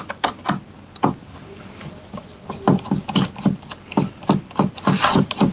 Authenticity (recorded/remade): recorded